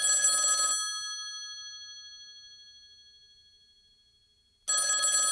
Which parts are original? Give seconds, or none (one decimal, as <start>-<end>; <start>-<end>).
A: 0.0-5.3